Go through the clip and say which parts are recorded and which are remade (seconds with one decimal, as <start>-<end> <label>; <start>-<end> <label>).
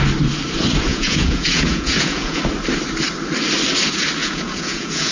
0.0-0.9 recorded; 0.9-2.4 remade; 2.4-4.2 recorded; 4.2-5.1 remade